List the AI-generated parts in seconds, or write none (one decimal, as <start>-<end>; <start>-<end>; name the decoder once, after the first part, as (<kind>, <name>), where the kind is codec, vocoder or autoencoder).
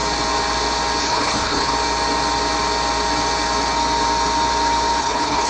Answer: 1.0-1.7 (codec, HILCodec); 5.0-5.5